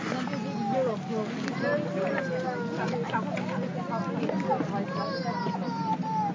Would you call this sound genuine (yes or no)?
yes